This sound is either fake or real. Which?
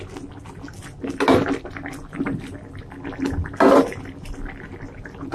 real